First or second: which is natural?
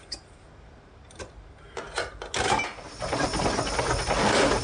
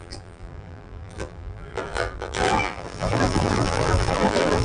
first